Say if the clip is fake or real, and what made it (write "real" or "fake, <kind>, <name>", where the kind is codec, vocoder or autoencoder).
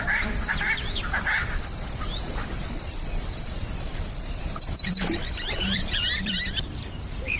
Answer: fake, vocoder, BigVGAN v2